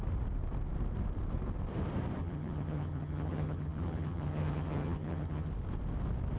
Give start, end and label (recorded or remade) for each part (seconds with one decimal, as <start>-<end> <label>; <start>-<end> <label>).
0.0-2.2 recorded; 2.2-5.5 remade; 5.5-6.4 recorded